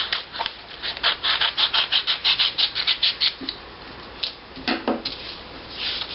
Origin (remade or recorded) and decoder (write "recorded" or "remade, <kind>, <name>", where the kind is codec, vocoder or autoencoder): recorded